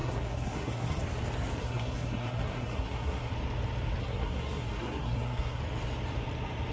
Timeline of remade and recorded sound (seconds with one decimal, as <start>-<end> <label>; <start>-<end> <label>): 0.0-1.0 remade; 1.0-1.6 recorded; 1.6-3.3 remade; 3.3-4.0 recorded; 4.0-5.6 remade; 5.6-6.7 recorded